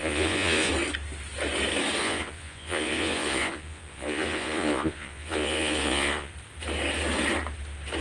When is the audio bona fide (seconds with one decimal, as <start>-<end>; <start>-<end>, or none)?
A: 0.7-2.0; 6.3-8.0